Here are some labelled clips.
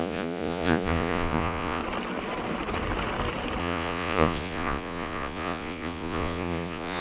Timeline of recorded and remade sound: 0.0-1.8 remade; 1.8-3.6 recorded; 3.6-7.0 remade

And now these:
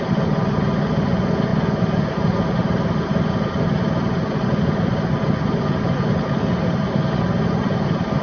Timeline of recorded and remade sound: 0.0-8.2 recorded

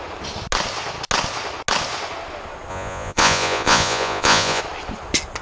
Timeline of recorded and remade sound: 0.0-2.7 recorded; 2.7-4.6 remade; 4.6-5.4 recorded

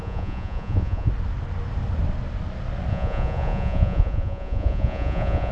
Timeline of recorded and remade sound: 0.0-1.1 remade; 1.1-2.9 recorded; 2.9-5.5 remade

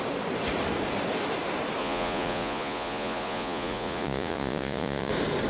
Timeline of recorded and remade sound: 0.0-1.8 recorded; 1.8-5.1 remade; 5.1-5.5 recorded

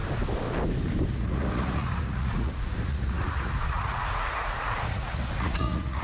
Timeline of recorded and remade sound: 0.0-1.1 recorded; 1.1-6.0 remade

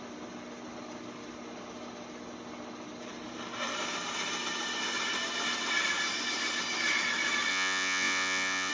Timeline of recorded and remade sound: 0.0-7.5 recorded; 7.5-8.7 remade

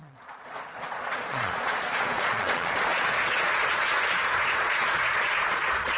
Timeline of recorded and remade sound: 0.0-6.0 remade